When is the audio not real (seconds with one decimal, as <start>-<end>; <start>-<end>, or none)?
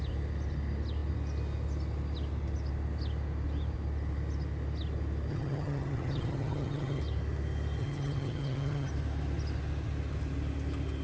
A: 5.3-7.0; 7.8-8.9